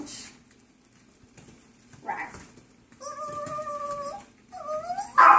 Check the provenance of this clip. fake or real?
real